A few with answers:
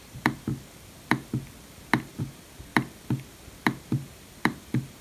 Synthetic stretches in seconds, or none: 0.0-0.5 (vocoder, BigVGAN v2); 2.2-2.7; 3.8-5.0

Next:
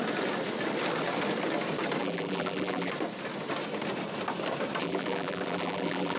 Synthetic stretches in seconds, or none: 2.0-2.9 (vocoder, BigVGAN v2); 4.8-6.2

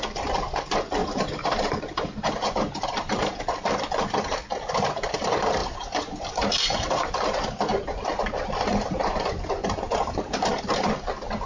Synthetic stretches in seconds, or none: 1.0-3.4 (vocoder, BigVGAN v2); 5.6-10.9

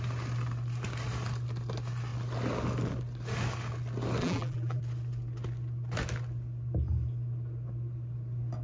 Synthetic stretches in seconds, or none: 4.2-4.8 (vocoder, BigVGAN v2)

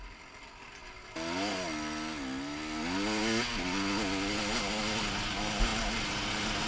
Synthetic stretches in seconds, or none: none

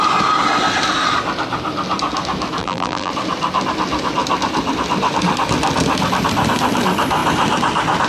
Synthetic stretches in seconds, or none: 2.6-3.1 (vocoder, BigVGAN v2)

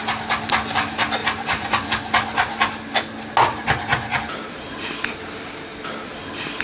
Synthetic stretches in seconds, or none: 1.2-1.9 (vocoder, BigVGAN v2); 3.6-4.9